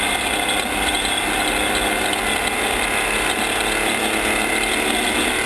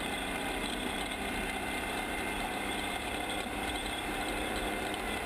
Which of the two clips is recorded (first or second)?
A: first